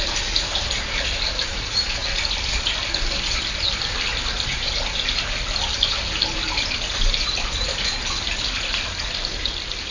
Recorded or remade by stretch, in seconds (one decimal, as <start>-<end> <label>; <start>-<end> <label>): 0.0-9.9 recorded

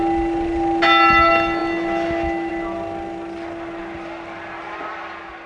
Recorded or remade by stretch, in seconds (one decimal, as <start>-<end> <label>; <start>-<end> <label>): 0.0-5.5 recorded

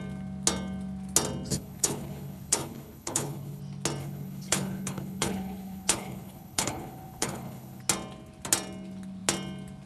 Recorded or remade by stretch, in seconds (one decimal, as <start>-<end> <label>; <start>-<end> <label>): 0.0-1.5 recorded; 1.5-3.6 remade; 3.6-4.0 recorded; 4.0-7.8 remade; 7.8-9.9 recorded

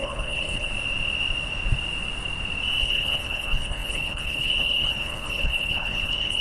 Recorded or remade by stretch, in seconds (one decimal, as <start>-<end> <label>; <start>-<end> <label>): 0.0-0.7 remade; 0.7-2.8 recorded; 2.8-6.4 remade

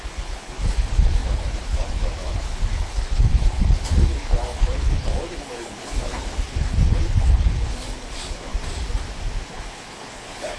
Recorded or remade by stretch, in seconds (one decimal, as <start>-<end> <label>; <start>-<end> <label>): 0.0-8.5 remade; 8.5-9.5 recorded; 9.5-10.6 remade

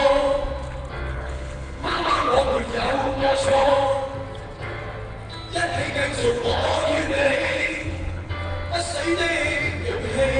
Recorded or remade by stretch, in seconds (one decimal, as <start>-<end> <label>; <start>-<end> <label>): 0.0-1.1 recorded; 1.1-3.7 remade; 3.7-6.2 recorded; 6.2-8.3 remade; 8.3-10.4 recorded

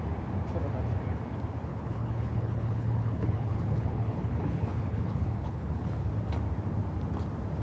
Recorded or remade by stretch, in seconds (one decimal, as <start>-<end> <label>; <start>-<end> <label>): 0.0-1.7 recorded; 1.7-6.1 remade; 6.1-7.6 recorded

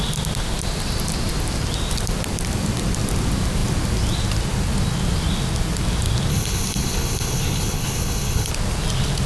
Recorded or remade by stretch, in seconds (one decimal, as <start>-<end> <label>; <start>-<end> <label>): 0.0-6.3 recorded; 6.3-8.5 remade; 8.5-9.3 recorded